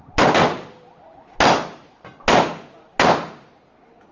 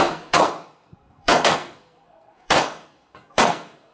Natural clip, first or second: first